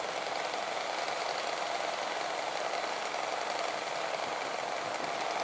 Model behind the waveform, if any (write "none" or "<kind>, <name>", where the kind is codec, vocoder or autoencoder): none